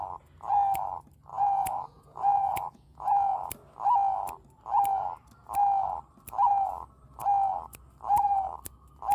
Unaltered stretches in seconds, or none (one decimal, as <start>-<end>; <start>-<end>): 0.0-1.3; 3.5-9.1